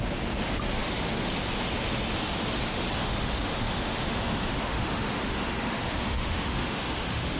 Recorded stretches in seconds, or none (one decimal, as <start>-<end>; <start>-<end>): 0.0-0.8; 1.3-3.0